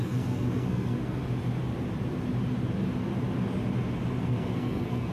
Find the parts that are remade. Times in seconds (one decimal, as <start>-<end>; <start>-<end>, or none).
0.0-1.2; 4.2-5.1